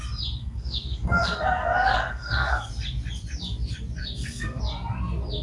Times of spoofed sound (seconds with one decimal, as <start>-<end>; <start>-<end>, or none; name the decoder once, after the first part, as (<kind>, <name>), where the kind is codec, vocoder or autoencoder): 0.4-2.7 (codec, SNAC); 4.0-4.6